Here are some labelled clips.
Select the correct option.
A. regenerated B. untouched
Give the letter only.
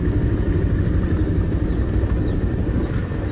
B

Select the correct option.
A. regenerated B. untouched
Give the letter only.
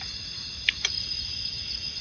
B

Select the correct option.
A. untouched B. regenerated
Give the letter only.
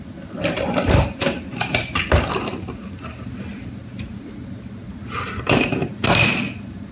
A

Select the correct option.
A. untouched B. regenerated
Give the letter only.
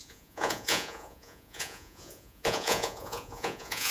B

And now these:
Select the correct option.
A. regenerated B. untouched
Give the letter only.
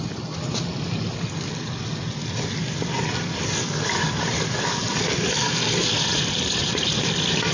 B